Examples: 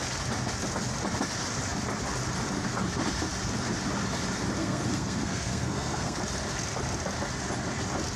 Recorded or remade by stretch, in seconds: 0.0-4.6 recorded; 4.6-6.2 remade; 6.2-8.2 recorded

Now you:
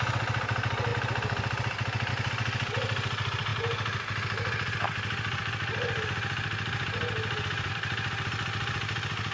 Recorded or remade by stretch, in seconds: 0.0-9.3 recorded

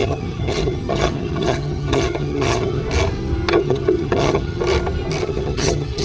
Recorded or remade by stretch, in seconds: 0.0-2.8 remade; 2.8-3.5 recorded; 3.5-4.6 remade; 4.6-5.2 recorded; 5.2-6.0 remade

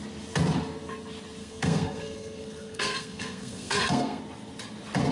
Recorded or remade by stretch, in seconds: 0.0-1.4 recorded; 1.4-4.2 remade; 4.2-5.1 recorded